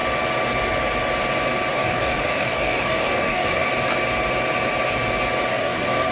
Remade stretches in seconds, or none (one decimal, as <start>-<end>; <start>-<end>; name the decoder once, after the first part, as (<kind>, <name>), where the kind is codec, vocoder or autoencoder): 1.7-3.7 (codec, DAC); 5.5-6.1